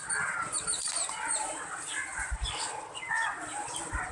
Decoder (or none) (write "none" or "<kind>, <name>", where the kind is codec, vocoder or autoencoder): none